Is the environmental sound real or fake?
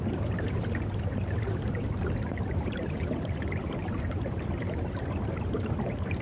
fake